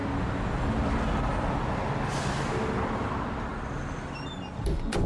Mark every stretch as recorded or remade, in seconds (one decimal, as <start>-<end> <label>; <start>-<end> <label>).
0.0-5.1 recorded